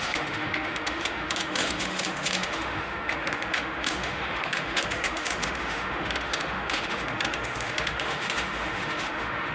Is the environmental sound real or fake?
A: fake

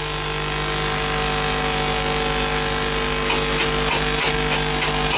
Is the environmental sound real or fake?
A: real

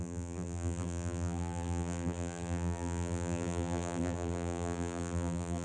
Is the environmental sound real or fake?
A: fake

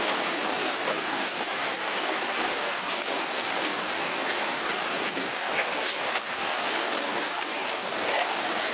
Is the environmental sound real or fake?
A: fake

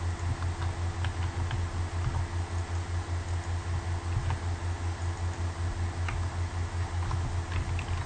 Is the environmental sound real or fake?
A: real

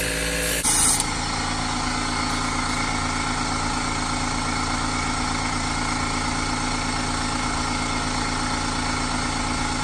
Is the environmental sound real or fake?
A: real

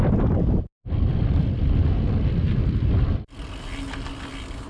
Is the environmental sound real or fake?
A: real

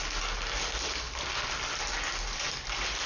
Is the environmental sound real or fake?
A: real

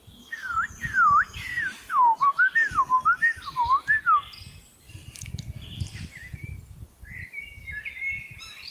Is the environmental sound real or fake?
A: real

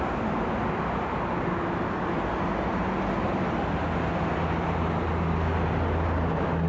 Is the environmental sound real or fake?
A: real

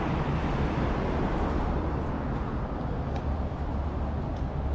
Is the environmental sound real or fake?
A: real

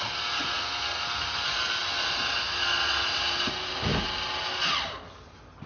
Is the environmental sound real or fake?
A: real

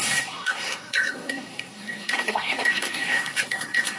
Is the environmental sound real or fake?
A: fake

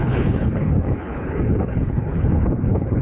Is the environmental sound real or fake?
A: fake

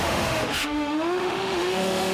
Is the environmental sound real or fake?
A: fake